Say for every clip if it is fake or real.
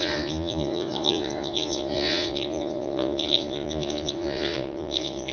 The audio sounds fake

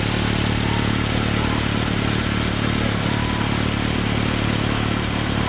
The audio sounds real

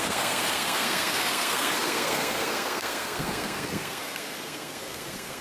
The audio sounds fake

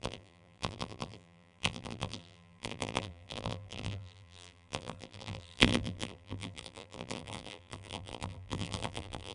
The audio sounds fake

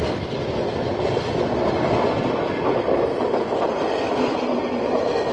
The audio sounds real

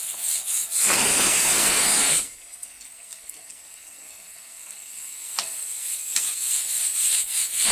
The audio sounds fake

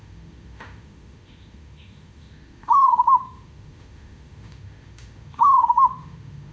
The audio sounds fake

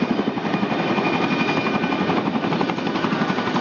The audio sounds real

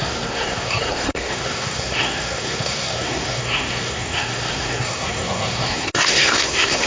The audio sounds fake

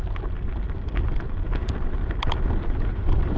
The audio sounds real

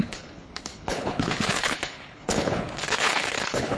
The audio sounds fake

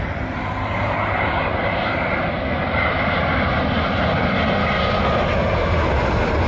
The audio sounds real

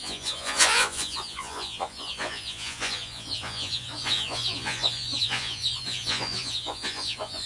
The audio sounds fake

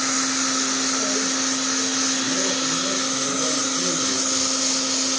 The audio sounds real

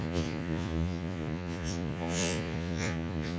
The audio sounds fake